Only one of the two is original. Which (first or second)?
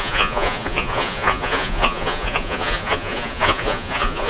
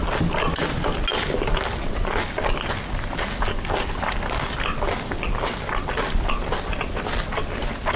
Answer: second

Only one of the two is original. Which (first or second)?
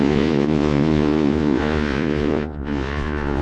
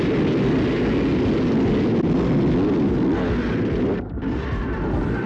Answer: second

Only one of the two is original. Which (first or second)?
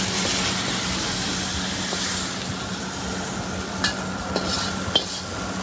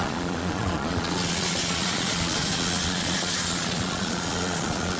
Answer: first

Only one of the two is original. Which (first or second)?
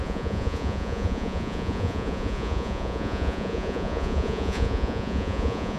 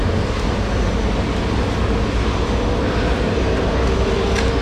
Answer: second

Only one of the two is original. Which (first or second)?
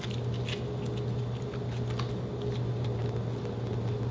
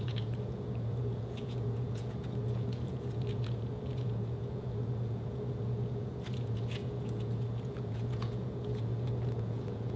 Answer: first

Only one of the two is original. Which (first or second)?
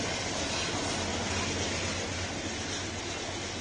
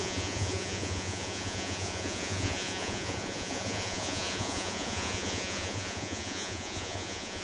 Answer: first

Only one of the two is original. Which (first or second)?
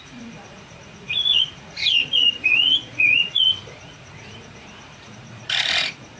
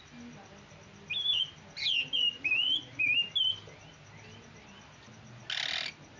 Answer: second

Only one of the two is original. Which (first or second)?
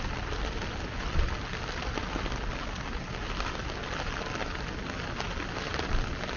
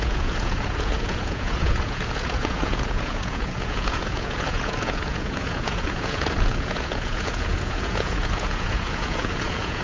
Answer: first